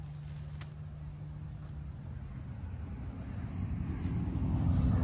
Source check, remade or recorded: recorded